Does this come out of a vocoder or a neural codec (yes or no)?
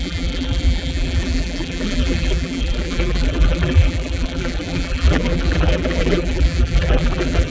yes